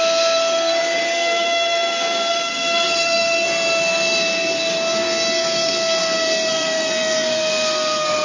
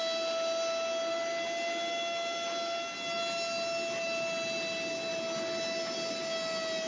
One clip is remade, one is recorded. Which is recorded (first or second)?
second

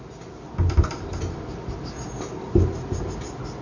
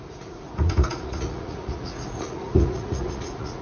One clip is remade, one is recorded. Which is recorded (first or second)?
first